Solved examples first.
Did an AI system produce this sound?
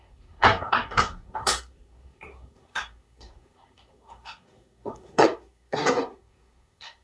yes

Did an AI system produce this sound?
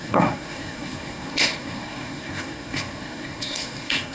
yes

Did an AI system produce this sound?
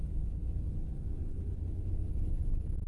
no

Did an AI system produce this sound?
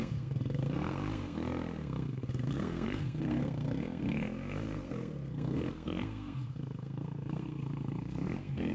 yes